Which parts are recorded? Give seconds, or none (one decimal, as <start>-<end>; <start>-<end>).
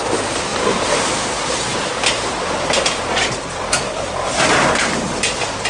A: 0.0-0.5; 1.1-5.7